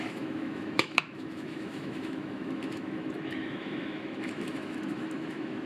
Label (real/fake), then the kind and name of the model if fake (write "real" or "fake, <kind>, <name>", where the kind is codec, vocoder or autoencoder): fake, autoencoder, DAC-VAE